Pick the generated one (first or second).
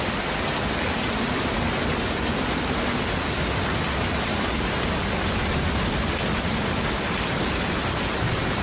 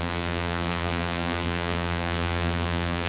second